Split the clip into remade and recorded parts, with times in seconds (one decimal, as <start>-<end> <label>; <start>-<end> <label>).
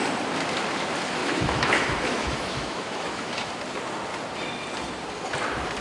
0.0-1.2 recorded; 1.2-3.5 remade; 3.5-5.8 recorded